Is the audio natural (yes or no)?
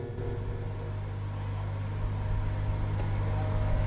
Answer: yes